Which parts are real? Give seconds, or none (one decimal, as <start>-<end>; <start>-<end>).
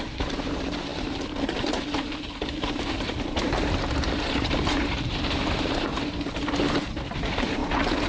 7.6-8.1